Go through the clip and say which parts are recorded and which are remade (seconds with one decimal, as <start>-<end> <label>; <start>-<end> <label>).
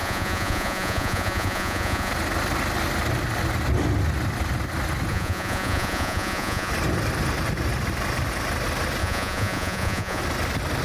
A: 0.0-2.1 remade; 2.1-5.1 recorded; 5.1-6.7 remade; 6.7-9.0 recorded; 9.0-10.2 remade; 10.2-10.8 recorded